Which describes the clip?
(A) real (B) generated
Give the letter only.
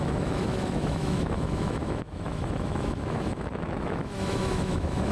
B